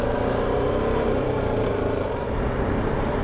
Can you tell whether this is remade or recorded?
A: remade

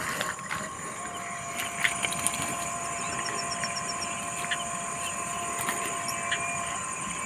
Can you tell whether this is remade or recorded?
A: recorded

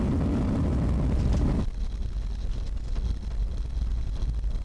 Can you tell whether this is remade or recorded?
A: recorded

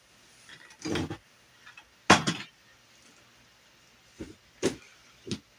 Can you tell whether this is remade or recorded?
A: recorded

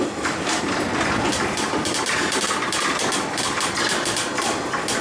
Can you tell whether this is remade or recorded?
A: remade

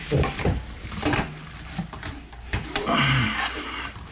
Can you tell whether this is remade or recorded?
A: remade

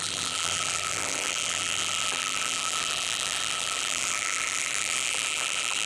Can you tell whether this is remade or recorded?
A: remade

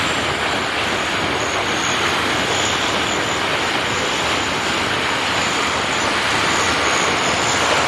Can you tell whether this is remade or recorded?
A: recorded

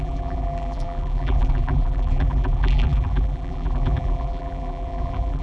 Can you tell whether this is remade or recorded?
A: remade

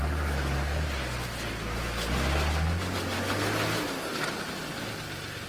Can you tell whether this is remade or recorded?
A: recorded